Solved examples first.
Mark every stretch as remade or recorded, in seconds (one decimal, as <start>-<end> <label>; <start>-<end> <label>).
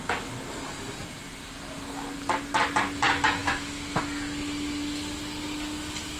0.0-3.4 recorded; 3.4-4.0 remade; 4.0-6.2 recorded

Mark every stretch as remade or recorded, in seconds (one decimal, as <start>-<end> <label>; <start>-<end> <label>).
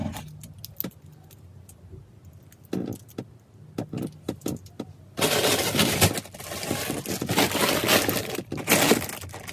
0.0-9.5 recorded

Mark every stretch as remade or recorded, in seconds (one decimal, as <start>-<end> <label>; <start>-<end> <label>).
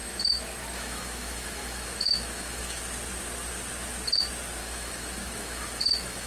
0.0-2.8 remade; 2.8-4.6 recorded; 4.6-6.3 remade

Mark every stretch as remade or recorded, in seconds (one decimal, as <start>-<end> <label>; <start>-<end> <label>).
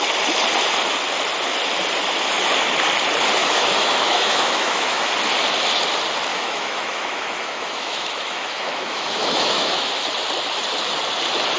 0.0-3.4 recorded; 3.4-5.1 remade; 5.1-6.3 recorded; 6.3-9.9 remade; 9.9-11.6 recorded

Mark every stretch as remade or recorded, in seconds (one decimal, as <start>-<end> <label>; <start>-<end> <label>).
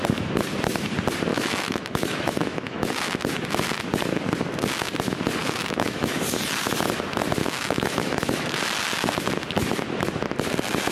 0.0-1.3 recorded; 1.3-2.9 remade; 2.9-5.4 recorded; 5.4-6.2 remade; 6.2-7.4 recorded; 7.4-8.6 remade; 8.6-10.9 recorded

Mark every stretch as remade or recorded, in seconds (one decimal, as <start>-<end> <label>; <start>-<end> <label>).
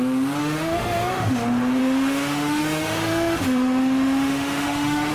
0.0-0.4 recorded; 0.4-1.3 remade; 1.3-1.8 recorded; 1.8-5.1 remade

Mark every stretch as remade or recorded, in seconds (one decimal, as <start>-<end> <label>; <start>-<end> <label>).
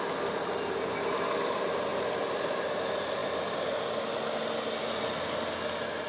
0.0-6.1 recorded